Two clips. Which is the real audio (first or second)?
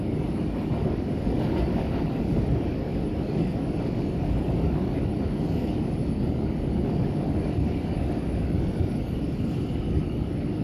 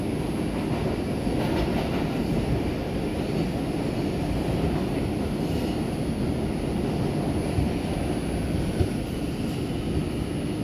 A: second